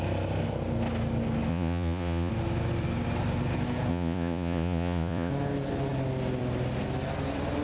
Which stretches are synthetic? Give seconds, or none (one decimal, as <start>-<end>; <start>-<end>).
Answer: 1.5-2.3; 3.9-5.3